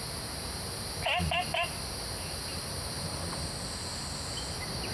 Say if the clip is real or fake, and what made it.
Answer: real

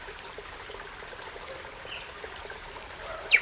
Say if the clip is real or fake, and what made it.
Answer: real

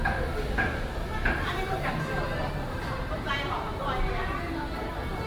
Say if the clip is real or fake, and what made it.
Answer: fake, vocoder, BigVGAN v2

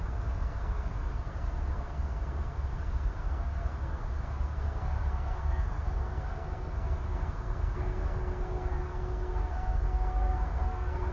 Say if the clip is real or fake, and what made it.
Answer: fake, codec, SNAC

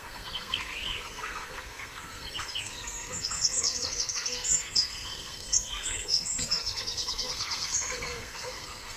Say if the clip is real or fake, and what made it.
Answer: fake, codec, SNAC